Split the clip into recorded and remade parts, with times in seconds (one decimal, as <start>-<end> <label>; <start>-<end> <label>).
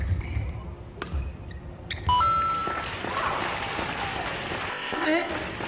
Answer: 0.0-4.7 recorded; 4.7-5.3 remade; 5.3-5.7 recorded